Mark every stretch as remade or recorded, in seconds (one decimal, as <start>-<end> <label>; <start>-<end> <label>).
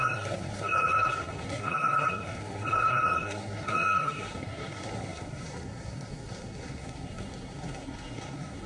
0.0-8.7 remade